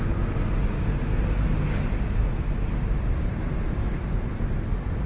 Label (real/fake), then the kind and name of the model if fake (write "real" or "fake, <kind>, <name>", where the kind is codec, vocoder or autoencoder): real